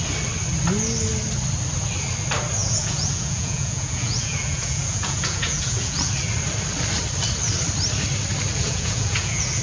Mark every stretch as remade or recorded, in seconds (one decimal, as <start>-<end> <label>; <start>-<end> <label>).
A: 0.0-2.6 recorded; 2.6-6.1 remade; 6.1-8.5 recorded; 8.5-9.6 remade